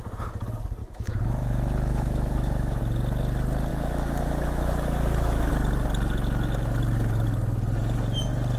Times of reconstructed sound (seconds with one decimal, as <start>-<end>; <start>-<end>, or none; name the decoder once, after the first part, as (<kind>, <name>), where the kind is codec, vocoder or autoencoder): 0.8-2.8 (autoencoder, DAC-VAE); 3.7-5.5